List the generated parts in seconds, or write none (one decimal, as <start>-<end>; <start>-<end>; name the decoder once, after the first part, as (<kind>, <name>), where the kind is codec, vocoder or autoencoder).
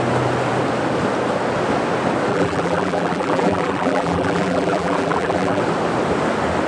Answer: 2.3-5.6 (vocoder, BigVGAN v2)